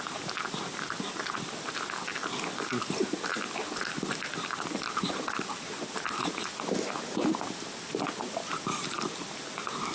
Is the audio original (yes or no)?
yes